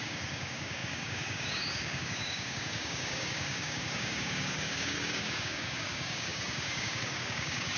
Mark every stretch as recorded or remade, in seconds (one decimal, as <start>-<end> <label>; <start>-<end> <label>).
0.0-7.8 remade